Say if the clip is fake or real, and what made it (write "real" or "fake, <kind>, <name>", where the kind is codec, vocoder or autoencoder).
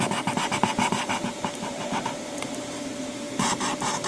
fake, vocoder, BigVGAN v2